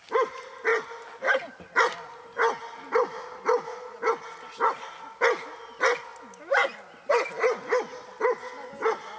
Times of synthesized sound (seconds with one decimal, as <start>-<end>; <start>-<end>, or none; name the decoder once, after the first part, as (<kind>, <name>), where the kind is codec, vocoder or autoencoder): none